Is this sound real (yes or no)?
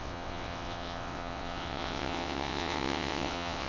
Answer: no